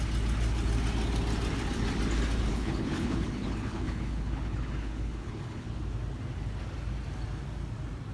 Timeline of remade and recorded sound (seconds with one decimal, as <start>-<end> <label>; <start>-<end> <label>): 0.0-2.5 recorded; 2.5-5.8 remade; 5.8-8.1 recorded